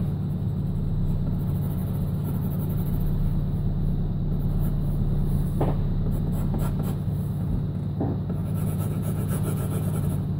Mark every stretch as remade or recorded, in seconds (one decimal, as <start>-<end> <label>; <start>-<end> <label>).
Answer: 0.0-8.4 recorded; 8.4-10.0 remade; 10.0-10.4 recorded